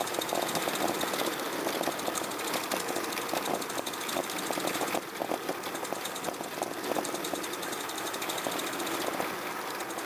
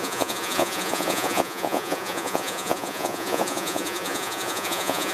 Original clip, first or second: first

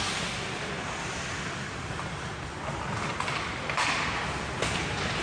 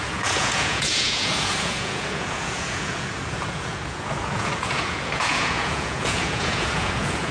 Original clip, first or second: first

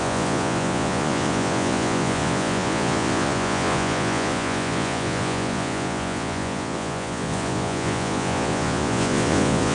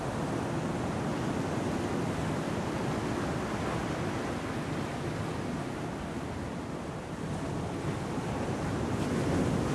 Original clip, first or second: second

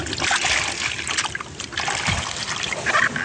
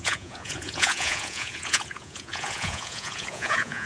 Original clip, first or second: first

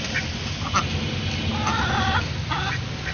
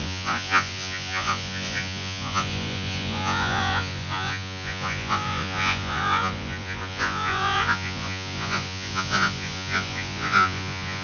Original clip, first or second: first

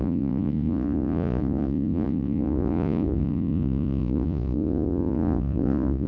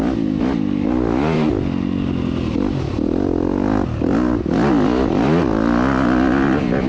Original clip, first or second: second